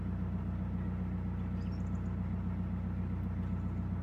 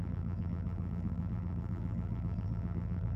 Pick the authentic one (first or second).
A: first